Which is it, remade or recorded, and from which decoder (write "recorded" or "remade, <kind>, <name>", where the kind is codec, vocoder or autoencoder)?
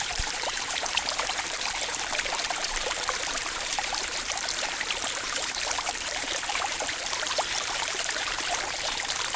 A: remade, vocoder, BigVGAN v2